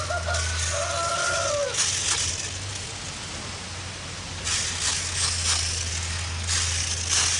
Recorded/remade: recorded